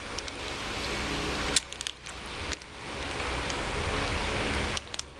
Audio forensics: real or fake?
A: real